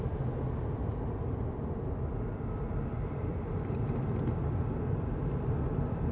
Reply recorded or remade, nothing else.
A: remade